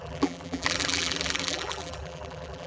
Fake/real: fake